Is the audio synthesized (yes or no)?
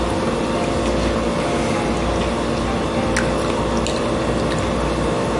no